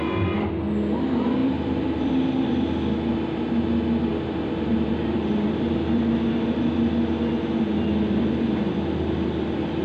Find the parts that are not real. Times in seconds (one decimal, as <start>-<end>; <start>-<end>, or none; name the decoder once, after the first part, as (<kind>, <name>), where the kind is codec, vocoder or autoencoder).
1.4-2.1 (vocoder, BigVGAN v2); 4.1-6.0